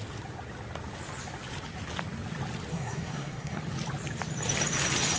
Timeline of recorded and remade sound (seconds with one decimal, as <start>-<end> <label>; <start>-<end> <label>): 0.0-2.7 recorded; 2.7-3.6 remade; 3.6-5.2 recorded